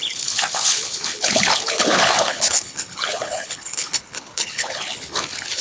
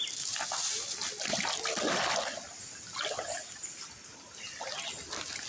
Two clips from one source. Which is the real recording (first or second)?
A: second